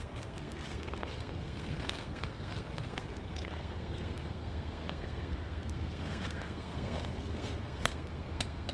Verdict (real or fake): fake